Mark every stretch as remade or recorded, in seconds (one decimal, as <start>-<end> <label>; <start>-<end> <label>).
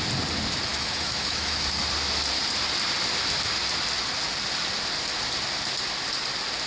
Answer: 0.0-0.7 recorded; 0.7-1.8 remade; 1.8-6.7 recorded